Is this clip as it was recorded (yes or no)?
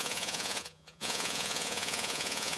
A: no